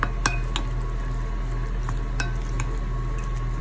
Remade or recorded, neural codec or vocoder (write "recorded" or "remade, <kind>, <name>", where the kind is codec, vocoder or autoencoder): recorded